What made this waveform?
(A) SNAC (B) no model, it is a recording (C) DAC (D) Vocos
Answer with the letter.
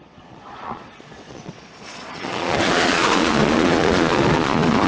D